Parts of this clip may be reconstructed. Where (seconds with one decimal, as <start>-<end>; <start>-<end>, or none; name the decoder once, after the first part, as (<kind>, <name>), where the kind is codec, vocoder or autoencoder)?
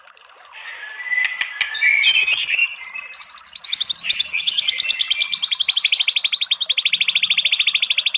none